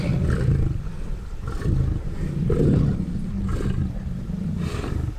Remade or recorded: recorded